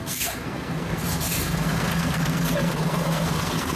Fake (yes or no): yes